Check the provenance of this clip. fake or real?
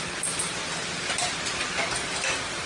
real